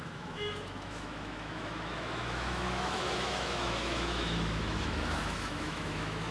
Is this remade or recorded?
remade